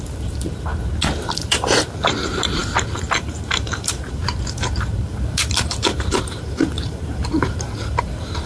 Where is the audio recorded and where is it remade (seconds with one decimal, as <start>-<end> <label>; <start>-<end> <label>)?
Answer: 0.0-0.7 remade; 0.7-1.3 recorded; 1.3-8.5 remade